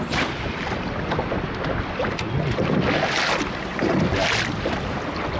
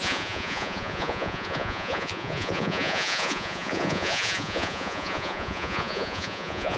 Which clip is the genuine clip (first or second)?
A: first